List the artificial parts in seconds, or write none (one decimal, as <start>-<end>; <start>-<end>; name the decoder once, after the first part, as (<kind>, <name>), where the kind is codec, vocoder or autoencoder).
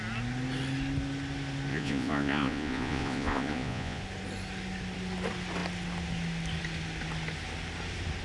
1.7-4.0 (vocoder, Vocos)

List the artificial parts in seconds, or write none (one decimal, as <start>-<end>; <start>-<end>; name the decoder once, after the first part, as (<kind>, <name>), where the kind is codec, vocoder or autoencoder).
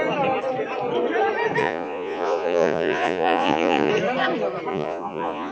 1.6-3.9 (vocoder, Vocos); 4.7-5.5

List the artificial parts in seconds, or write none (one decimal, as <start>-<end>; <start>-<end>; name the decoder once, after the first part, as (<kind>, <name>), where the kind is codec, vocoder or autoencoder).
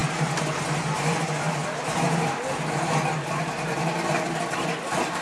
none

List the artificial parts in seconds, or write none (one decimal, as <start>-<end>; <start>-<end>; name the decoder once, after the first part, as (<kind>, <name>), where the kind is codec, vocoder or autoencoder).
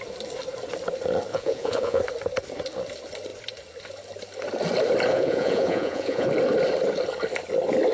1.3-2.0 (vocoder, Vocos); 5.1-6.3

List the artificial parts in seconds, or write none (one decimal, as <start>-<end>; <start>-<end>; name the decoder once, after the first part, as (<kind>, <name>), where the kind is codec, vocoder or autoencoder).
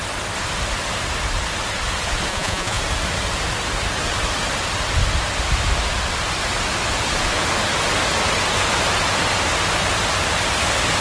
2.3-2.8 (vocoder, Vocos)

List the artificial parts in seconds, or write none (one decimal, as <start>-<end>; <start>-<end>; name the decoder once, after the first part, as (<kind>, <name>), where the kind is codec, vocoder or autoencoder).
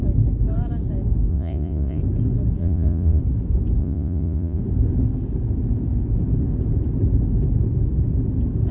1.3-2.0 (vocoder, Vocos); 2.6-3.2; 3.8-4.6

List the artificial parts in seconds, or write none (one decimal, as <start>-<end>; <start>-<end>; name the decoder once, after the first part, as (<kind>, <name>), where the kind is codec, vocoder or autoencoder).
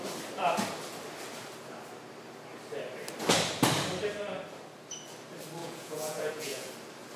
5.6-6.7 (vocoder, Vocos)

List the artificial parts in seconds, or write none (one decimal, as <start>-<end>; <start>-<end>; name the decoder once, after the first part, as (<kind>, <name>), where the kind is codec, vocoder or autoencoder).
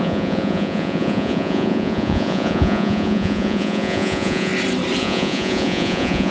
0.0-4.5 (vocoder, Vocos); 5.0-6.3